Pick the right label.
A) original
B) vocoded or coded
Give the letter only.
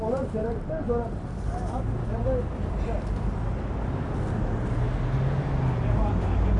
A